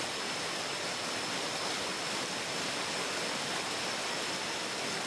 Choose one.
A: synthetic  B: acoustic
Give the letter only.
B